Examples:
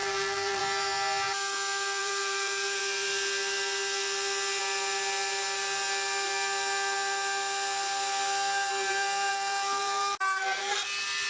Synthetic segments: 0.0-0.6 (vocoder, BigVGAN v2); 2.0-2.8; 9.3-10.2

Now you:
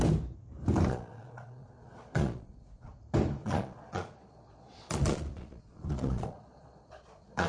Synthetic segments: 0.9-2.9 (vocoder, Vocos); 3.4-7.5

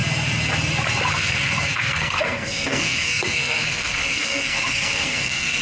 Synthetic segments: 1.1-5.6 (codec, SNAC)

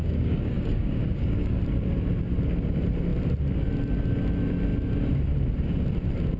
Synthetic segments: 0.0-1.6 (codec, DAC)

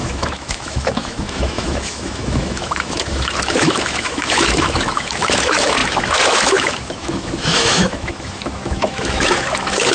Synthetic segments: 0.0-9.9 (autoencoder, DAC-VAE)